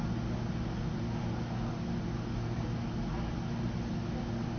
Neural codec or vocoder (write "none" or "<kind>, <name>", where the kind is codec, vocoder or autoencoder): none